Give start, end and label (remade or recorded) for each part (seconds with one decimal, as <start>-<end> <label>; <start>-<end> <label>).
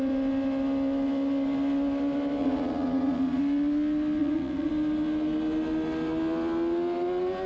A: 0.0-2.4 recorded; 2.4-3.4 remade; 3.4-4.2 recorded; 4.2-4.7 remade; 4.7-7.5 recorded